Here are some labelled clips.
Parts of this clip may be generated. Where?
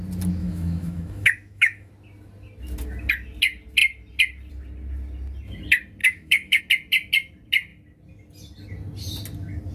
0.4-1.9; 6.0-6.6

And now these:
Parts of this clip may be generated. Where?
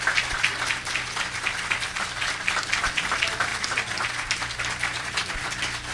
0.0-3.5; 4.7-5.9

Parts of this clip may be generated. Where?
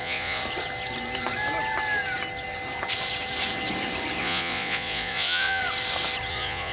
0.0-0.4; 4.2-5.6; 6.3-6.7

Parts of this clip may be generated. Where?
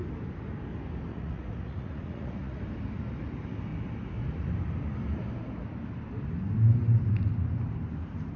1.1-2.6